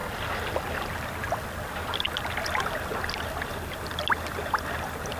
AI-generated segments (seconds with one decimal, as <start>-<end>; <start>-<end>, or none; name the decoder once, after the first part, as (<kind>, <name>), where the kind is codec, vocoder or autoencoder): none